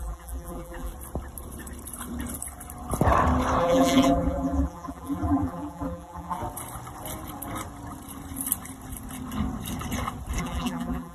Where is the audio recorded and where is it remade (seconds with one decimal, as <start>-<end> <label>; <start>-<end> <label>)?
0.0-0.9 remade; 0.9-3.6 recorded; 3.6-6.4 remade; 6.4-10.4 recorded; 10.4-11.1 remade